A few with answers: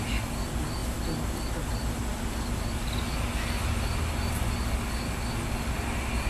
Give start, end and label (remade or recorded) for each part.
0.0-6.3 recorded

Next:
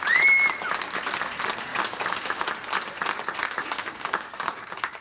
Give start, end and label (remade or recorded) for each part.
0.0-1.7 recorded; 1.7-2.4 remade; 2.4-3.6 recorded; 3.6-5.0 remade

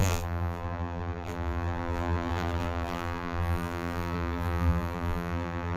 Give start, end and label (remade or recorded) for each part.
0.0-5.8 remade

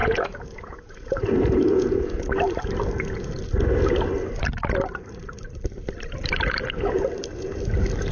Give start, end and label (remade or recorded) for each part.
0.0-2.2 remade; 2.2-8.1 recorded

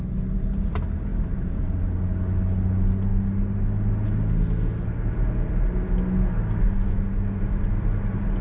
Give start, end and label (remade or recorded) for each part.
0.0-8.4 recorded

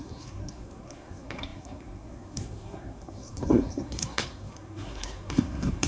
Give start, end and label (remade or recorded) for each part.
0.0-5.9 remade

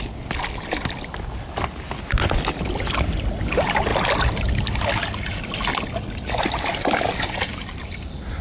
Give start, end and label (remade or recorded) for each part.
0.0-8.4 recorded

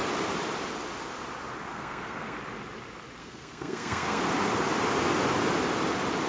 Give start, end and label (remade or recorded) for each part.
0.0-1.7 recorded; 1.7-2.4 remade; 2.4-3.2 recorded; 3.2-4.2 remade; 4.2-6.3 recorded